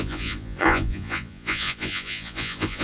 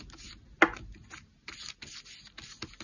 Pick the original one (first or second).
second